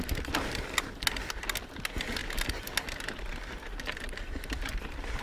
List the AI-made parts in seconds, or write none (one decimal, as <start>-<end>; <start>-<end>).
none